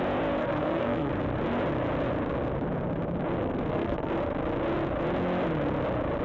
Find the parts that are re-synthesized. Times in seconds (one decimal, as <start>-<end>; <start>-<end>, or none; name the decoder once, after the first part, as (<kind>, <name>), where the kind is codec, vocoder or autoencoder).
0.4-1.1 (codec, SNAC); 3.4-4.1